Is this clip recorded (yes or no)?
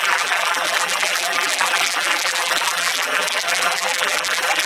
no